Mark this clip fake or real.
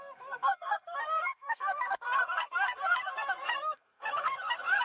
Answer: fake